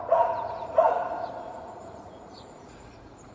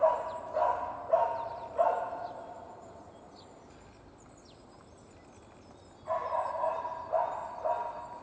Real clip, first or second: second